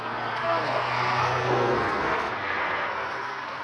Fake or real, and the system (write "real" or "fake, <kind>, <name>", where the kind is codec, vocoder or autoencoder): fake, codec, SNAC